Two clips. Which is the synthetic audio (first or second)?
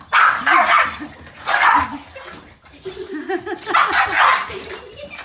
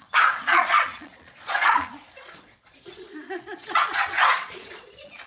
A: second